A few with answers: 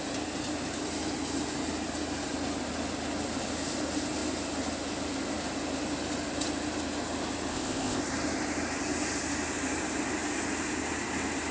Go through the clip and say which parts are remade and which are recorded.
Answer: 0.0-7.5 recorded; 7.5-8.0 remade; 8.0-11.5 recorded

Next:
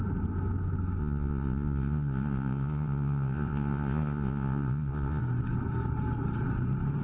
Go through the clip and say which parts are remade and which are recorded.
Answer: 0.0-1.0 recorded; 1.0-5.2 remade; 5.2-7.0 recorded

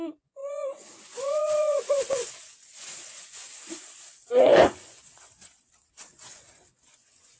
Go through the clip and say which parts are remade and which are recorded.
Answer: 0.0-7.4 remade

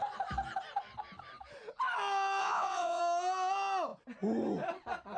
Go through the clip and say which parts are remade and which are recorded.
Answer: 0.0-2.4 recorded; 2.4-3.0 remade; 3.0-5.2 recorded

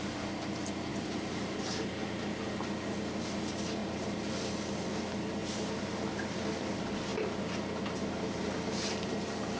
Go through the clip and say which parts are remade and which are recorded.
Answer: 0.0-0.9 recorded; 0.9-2.0 remade; 2.0-3.8 recorded; 3.8-4.3 remade; 4.3-5.4 recorded; 5.4-6.1 remade; 6.1-9.6 recorded

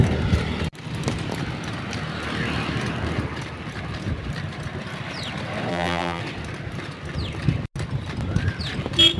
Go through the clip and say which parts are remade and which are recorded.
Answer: 0.0-5.7 recorded; 5.7-6.2 remade; 6.2-9.2 recorded